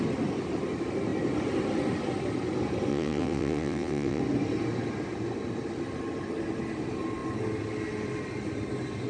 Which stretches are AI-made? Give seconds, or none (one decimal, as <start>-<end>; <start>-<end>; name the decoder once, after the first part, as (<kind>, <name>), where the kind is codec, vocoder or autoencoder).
2.9-4.2 (vocoder, WaveNeXt)